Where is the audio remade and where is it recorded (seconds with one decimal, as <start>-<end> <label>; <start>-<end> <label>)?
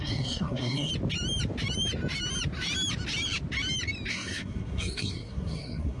0.0-0.9 remade; 0.9-4.1 recorded; 4.1-6.0 remade